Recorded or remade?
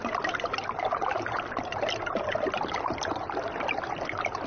recorded